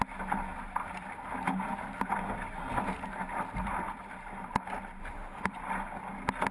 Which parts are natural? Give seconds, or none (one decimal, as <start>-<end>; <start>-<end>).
0.0-5.0; 5.5-6.5